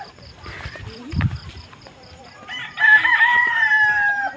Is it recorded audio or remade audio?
remade